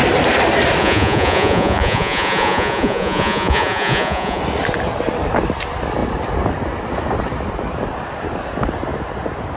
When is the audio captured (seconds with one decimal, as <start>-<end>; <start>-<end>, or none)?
0.0-0.8; 4.4-9.6